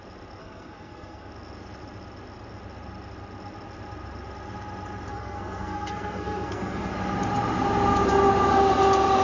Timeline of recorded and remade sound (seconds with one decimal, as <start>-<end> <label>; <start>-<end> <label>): 0.0-0.4 recorded; 0.4-1.3 remade; 1.3-5.1 recorded; 5.1-6.9 remade; 6.9-9.2 recorded